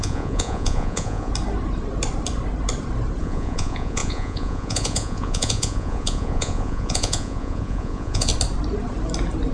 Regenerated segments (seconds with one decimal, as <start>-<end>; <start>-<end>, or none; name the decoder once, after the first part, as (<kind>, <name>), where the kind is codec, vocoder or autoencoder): 0.0-1.3 (vocoder, Vocos); 3.2-8.3